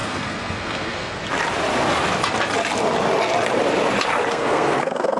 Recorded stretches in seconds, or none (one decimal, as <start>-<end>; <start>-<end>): 1.2-4.3